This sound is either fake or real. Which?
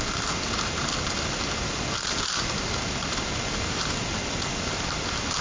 real